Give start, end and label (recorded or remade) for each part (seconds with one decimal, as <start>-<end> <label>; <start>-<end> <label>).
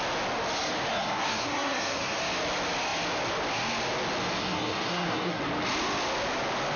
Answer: 0.0-0.9 recorded; 0.9-2.2 remade; 2.2-4.4 recorded; 4.4-5.4 remade; 5.4-6.8 recorded